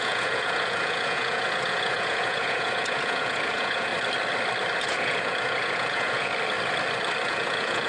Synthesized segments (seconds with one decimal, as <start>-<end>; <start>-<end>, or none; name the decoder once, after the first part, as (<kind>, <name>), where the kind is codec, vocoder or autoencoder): 0.0-3.9 (vocoder, Vocos); 4.8-6.3; 7.3-7.9